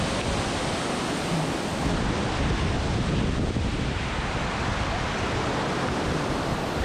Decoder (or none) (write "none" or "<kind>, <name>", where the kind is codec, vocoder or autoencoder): none